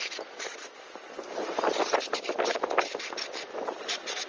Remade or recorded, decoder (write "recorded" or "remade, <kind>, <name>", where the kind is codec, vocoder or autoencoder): recorded